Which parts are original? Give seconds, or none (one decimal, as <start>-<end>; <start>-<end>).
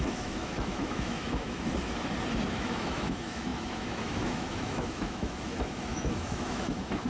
1.7-2.5